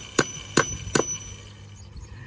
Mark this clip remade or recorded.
recorded